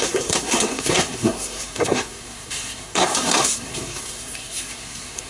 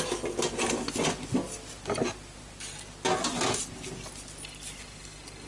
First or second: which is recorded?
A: second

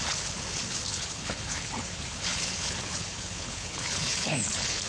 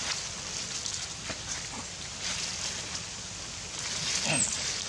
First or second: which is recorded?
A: second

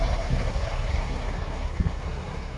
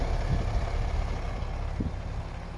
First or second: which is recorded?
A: second